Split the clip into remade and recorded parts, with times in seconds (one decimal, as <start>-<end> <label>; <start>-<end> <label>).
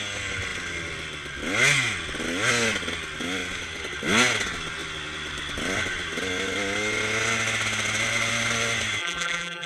0.0-9.0 recorded; 9.0-9.7 remade